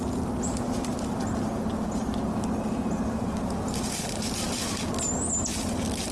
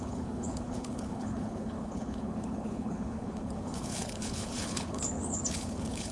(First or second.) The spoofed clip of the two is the second